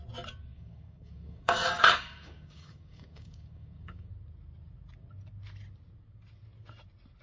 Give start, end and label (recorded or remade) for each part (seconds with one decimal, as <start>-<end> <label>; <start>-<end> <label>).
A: 0.0-0.5 recorded; 0.5-4.1 remade; 4.1-7.2 recorded